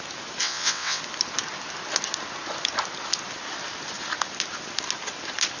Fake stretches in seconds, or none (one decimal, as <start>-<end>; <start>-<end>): 0.4-1.0